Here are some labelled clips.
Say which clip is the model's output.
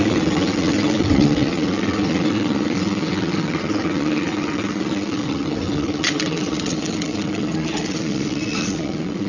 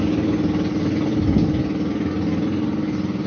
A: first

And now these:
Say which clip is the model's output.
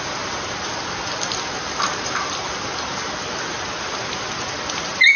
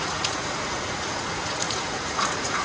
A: second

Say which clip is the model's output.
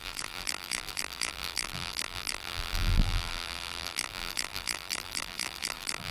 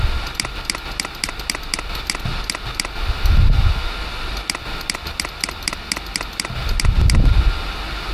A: first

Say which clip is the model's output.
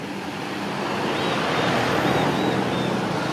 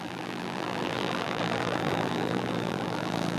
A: second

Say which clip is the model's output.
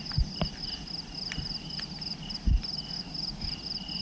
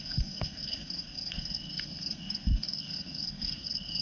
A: second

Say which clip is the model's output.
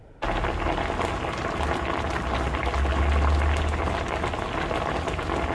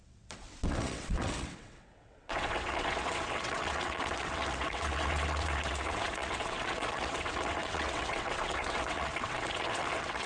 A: second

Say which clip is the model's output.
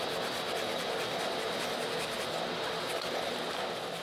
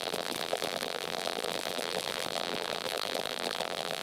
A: second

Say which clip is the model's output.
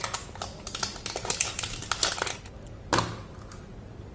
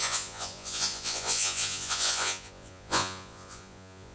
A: second